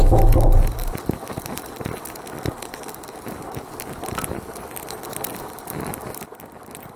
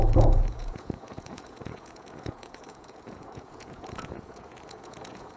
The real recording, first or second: first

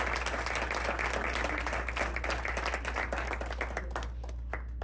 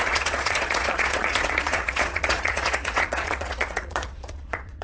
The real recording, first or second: first